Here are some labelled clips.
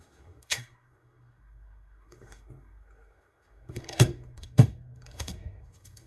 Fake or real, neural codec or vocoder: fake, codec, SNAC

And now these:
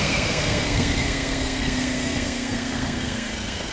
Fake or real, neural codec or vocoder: fake, codec, SNAC